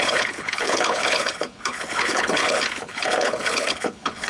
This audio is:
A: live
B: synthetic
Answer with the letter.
B